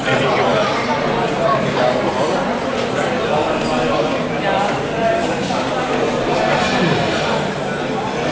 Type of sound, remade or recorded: recorded